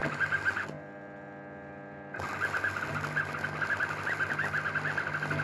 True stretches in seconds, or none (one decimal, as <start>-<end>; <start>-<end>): 0.0-5.4